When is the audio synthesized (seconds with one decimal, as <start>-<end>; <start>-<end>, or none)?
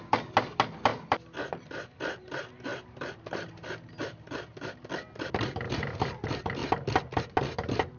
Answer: none